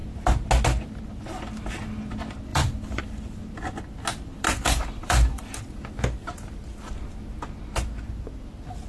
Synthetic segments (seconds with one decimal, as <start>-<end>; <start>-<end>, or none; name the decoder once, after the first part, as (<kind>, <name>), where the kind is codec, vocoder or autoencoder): 2.5-3.0 (vocoder, BigVGAN v2); 4.1-5.6